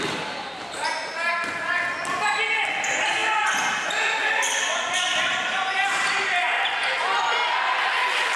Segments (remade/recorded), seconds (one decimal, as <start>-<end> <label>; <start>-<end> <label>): 0.0-8.4 recorded